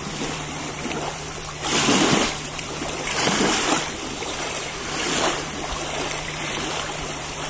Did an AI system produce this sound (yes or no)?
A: yes